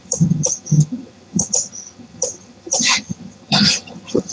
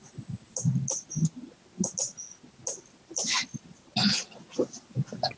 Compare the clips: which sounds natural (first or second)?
second